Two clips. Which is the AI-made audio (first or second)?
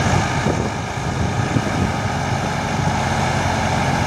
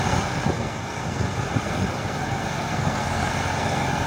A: second